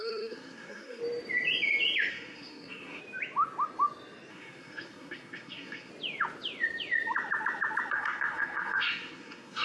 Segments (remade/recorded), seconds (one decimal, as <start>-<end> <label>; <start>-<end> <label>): 0.0-1.0 remade; 1.0-2.1 recorded; 2.1-3.0 remade; 3.0-4.3 recorded; 4.3-5.9 remade; 5.9-7.9 recorded; 7.9-9.6 remade